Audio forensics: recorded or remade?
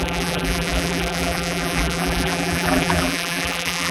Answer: remade